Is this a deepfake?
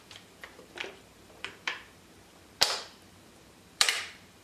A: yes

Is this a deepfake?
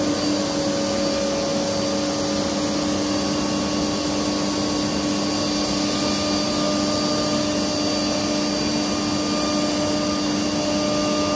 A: no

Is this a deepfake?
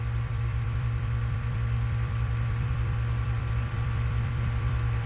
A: yes